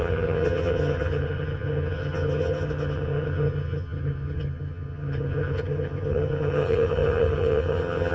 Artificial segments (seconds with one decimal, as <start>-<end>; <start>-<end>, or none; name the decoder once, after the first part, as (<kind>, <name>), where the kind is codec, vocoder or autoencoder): 0.0-8.1 (vocoder, HiFi-GAN)